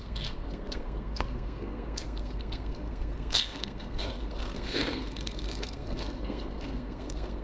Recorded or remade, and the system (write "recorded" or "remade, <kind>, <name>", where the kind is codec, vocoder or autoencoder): remade, codec, SNAC